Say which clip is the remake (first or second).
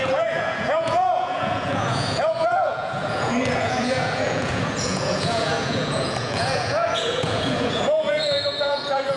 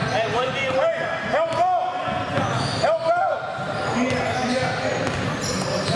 first